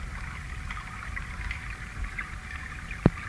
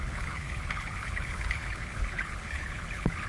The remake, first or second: second